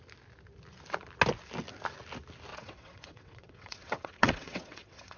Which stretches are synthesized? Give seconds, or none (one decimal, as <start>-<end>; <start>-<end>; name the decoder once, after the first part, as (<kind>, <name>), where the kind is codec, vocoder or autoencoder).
2.5-5.2 (vocoder, WaveNeXt)